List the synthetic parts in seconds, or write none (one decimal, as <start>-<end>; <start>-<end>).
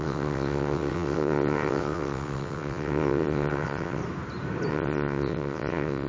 0.0-4.0; 4.7-6.1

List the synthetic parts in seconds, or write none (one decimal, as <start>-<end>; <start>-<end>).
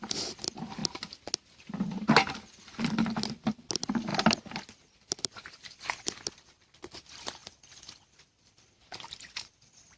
0.0-0.8; 3.3-4.1; 5.0-10.0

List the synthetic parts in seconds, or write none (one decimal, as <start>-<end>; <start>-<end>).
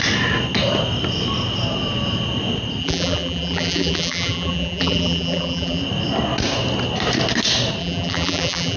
2.8-5.8; 7.8-8.8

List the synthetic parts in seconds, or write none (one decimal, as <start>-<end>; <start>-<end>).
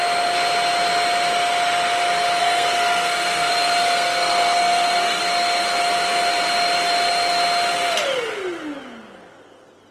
2.4-5.2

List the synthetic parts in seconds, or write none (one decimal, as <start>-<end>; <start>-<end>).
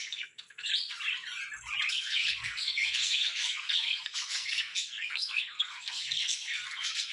0.0-0.7; 1.9-7.1